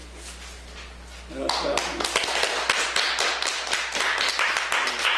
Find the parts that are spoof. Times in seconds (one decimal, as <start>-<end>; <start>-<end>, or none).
none